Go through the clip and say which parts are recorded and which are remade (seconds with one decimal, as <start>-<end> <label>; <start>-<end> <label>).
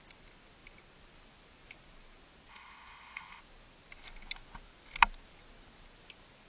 0.0-2.5 recorded; 2.5-3.4 remade; 3.4-6.5 recorded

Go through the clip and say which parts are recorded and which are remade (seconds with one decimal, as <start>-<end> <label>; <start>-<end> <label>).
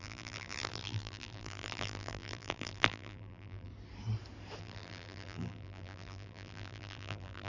0.0-3.7 remade; 3.7-4.6 recorded; 4.6-7.5 remade